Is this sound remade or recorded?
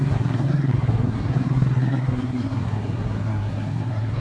remade